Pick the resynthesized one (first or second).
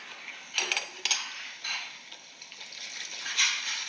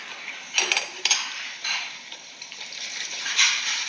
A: second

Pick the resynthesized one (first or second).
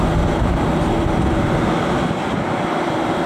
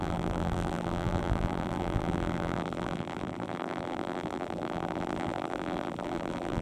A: second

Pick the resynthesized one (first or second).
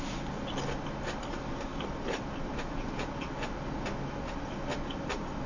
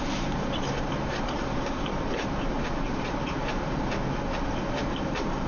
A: second